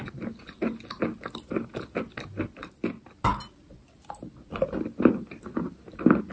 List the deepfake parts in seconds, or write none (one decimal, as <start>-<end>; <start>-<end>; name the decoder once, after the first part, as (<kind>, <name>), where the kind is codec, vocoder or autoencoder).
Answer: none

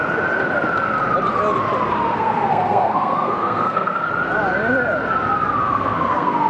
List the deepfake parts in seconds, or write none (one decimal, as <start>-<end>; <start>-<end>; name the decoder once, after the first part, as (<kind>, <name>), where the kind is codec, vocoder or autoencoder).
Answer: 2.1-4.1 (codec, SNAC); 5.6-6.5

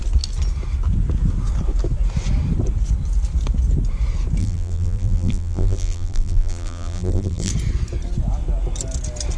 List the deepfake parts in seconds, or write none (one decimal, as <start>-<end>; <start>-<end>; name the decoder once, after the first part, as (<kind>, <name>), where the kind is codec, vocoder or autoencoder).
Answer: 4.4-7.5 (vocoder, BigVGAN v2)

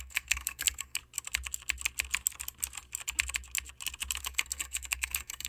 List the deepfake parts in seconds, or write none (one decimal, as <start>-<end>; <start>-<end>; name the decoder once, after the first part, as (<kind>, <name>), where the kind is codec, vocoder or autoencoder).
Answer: 0.0-1.0 (codec, SNAC); 4.2-5.5

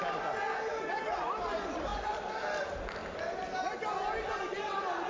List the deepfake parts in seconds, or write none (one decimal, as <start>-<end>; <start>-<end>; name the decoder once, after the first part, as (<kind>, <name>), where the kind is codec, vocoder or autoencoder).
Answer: none

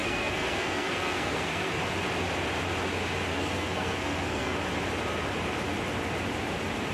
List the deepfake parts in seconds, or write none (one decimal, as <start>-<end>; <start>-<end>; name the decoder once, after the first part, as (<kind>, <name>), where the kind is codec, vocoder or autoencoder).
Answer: 0.0-1.8 (codec, SNAC); 3.3-4.6